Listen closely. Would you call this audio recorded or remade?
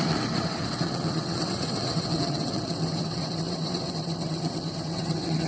remade